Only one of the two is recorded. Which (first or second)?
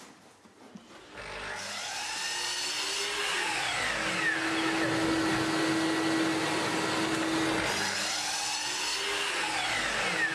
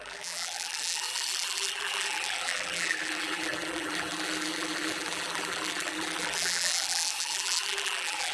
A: first